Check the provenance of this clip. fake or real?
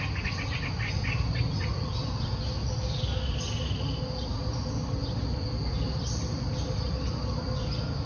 real